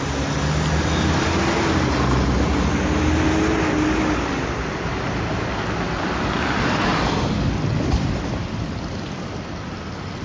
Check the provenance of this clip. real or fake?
real